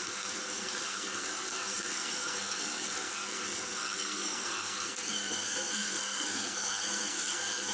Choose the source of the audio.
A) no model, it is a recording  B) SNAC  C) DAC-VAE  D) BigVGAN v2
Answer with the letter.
B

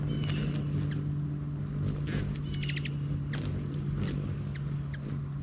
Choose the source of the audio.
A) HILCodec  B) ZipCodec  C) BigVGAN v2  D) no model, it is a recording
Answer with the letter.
D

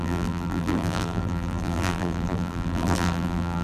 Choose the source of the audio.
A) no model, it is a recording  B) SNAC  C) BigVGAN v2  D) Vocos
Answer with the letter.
C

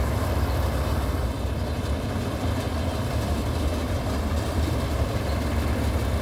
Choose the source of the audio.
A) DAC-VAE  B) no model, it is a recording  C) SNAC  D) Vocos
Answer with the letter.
B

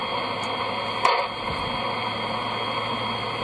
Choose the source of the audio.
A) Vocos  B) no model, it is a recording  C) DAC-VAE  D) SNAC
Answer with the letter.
B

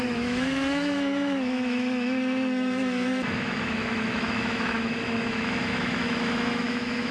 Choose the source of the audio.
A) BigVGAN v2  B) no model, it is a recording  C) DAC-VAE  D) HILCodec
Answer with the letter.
C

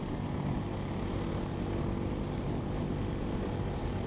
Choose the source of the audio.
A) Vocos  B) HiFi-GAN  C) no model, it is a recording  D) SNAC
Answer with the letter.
C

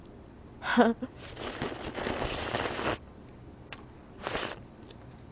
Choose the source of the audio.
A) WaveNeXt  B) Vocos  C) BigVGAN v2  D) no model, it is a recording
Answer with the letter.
D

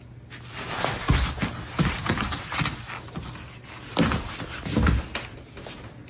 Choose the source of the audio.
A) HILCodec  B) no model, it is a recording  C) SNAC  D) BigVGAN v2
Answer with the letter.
B